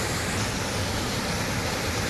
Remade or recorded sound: recorded